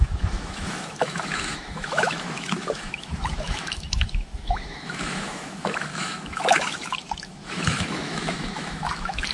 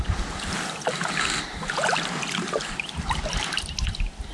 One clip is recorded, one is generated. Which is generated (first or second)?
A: first